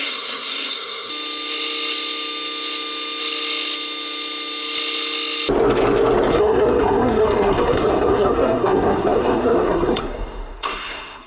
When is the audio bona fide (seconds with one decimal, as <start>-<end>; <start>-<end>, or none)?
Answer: 1.1-6.3